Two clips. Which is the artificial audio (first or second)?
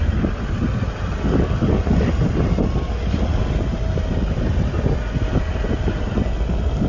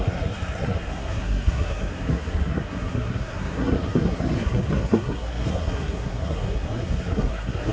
second